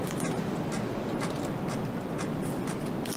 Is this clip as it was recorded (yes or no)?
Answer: yes